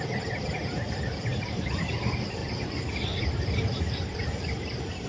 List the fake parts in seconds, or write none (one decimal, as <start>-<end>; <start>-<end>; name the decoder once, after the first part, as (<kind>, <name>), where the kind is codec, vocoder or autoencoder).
1.3-2.0 (vocoder, BigVGAN v2); 2.4-3.8